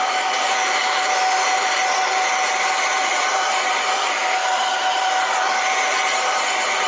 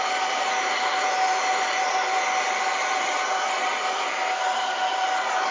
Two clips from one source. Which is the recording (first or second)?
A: second